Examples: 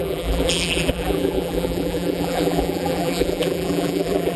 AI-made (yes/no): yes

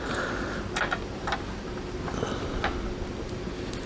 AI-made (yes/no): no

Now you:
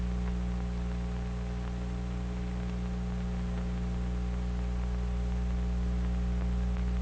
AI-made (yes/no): no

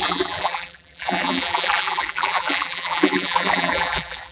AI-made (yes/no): yes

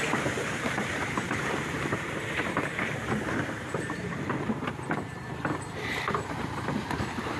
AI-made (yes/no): yes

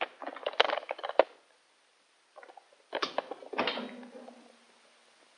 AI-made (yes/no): no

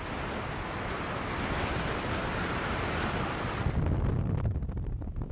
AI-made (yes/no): no